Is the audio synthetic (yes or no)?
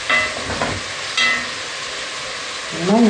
no